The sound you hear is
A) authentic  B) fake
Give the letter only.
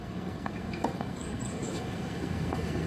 B